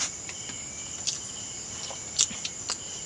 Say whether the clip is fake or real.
real